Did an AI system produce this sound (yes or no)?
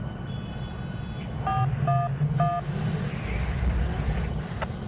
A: no